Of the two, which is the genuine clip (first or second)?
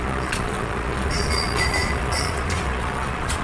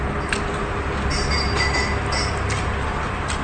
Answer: second